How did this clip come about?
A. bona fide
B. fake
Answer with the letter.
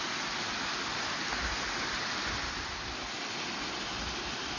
A